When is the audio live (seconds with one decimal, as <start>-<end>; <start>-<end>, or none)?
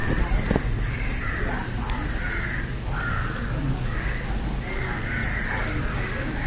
0.0-2.6; 5.2-5.8